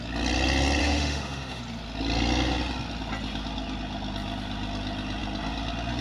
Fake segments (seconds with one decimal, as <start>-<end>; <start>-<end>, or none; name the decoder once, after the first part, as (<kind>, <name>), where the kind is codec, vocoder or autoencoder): 0.8-1.6 (autoencoder, DAC-VAE)